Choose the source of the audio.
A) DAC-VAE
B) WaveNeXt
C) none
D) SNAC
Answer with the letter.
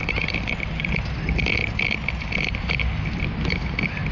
C